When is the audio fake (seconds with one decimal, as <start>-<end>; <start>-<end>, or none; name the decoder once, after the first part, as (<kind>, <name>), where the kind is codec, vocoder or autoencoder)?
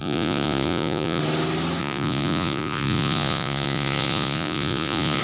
0.0-1.2 (vocoder, Vocos); 1.8-5.2